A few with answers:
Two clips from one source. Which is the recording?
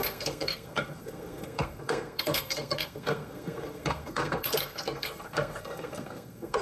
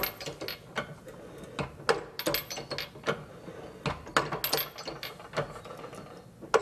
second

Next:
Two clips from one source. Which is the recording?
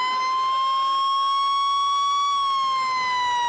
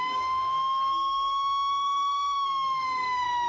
first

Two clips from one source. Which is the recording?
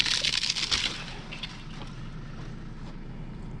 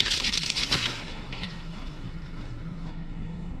first